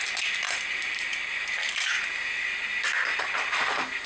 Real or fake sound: real